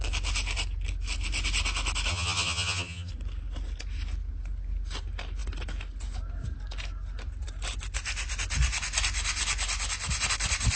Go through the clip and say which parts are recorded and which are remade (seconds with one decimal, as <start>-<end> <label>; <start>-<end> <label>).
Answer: 0.0-2.1 recorded; 2.1-3.1 remade; 3.1-10.8 recorded